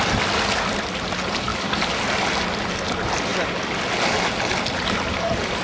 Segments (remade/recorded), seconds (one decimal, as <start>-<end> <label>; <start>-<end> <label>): 0.0-5.6 recorded

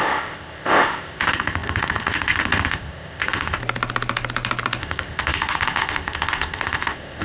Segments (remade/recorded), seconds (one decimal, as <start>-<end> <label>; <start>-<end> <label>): 0.0-3.6 remade; 3.6-4.8 recorded; 4.8-7.2 remade

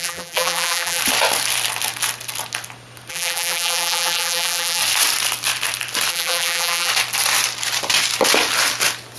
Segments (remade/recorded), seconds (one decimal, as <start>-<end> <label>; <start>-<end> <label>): 0.0-1.0 remade; 1.0-3.1 recorded; 3.1-4.8 remade; 4.8-6.1 recorded; 6.1-6.9 remade; 6.9-9.2 recorded

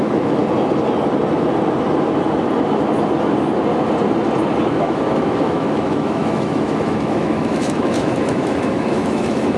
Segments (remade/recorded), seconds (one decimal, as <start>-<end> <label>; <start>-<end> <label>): 0.0-0.4 remade; 0.4-4.6 recorded; 4.6-9.6 remade

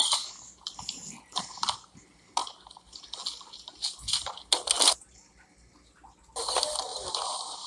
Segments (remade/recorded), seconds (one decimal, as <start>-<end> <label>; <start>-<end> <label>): 0.0-7.7 recorded

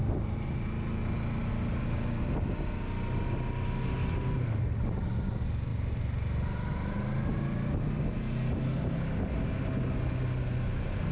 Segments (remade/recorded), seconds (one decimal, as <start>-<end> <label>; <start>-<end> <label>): 0.0-11.1 recorded